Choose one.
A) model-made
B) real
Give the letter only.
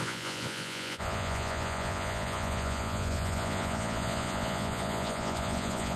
A